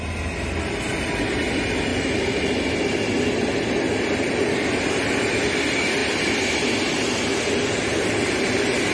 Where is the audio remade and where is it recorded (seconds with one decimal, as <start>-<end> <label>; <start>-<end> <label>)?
0.0-1.9 recorded; 1.9-4.5 remade; 4.5-8.9 recorded